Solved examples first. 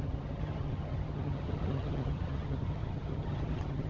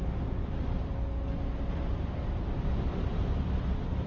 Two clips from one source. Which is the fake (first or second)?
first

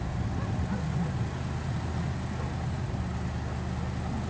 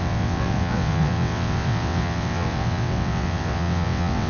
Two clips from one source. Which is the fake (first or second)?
second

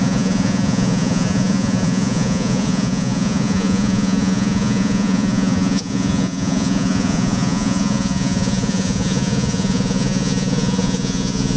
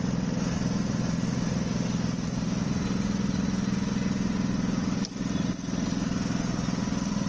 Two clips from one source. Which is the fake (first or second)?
first